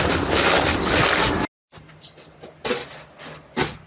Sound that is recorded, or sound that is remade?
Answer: recorded